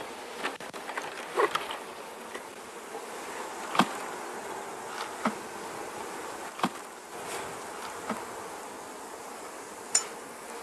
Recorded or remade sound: recorded